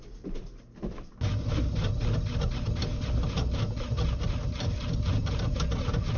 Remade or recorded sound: recorded